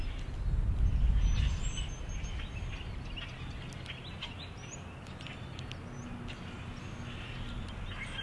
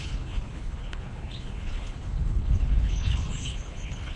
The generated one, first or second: second